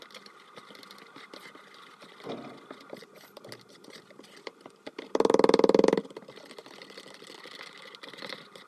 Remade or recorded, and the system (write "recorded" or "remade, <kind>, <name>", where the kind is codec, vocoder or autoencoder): recorded